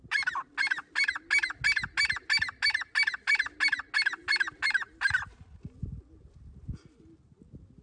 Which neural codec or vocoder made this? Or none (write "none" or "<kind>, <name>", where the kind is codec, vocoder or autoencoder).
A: none